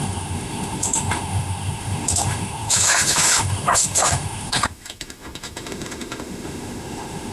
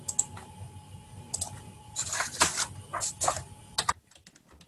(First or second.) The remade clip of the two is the first